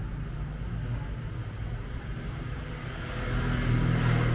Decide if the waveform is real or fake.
real